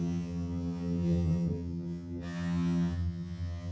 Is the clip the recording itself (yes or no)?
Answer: no